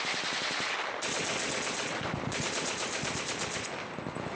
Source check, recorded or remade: recorded